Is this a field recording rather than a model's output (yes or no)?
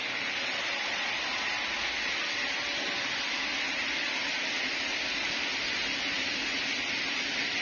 yes